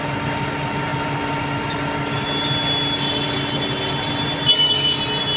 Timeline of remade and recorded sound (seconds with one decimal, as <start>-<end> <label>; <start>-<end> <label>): 0.0-4.5 recorded; 4.5-5.0 remade; 5.0-5.4 recorded